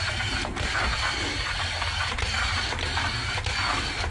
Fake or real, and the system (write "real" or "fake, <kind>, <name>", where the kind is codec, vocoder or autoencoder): real